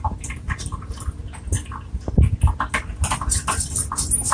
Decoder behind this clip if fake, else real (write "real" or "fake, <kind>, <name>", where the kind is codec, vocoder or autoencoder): real